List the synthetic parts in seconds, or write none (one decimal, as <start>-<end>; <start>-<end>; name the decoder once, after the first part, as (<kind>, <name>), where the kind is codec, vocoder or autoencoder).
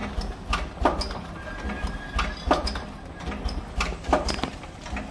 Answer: none